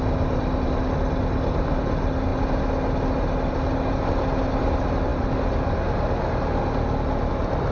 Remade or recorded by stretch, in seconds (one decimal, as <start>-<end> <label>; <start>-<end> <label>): 0.0-7.7 recorded